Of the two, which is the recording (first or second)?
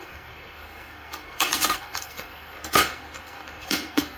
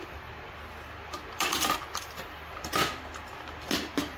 second